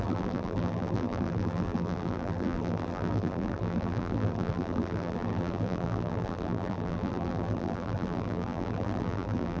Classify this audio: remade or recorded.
remade